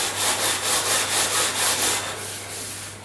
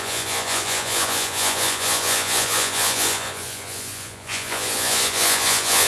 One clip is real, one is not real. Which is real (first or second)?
first